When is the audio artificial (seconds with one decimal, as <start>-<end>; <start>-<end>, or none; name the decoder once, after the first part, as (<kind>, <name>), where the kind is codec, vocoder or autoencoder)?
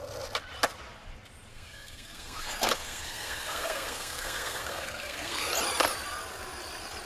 1.5-5.5 (codec, SNAC)